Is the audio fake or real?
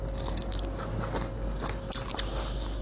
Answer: real